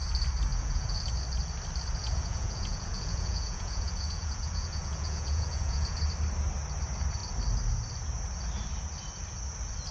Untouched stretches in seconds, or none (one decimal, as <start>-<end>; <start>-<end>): 0.0-0.5; 1.0-2.0; 6.0-9.9